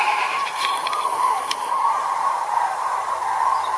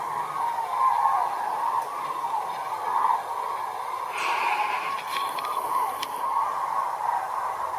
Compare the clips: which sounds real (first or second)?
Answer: second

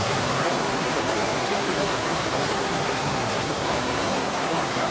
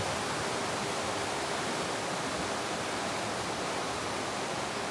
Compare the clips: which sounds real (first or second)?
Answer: second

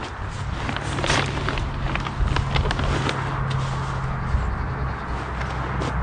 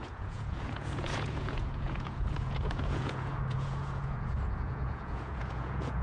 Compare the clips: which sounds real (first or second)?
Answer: first